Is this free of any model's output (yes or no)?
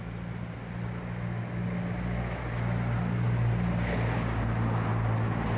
yes